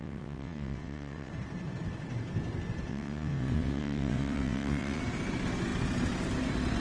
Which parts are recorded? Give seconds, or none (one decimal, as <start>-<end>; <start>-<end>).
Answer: 1.3-2.9; 5.0-6.8